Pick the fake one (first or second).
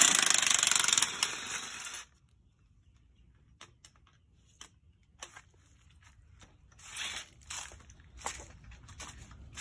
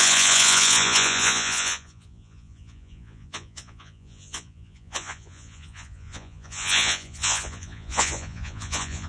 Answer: second